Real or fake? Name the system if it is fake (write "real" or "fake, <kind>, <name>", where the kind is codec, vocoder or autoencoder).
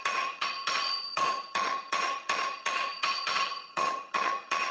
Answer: fake, vocoder, HiFi-GAN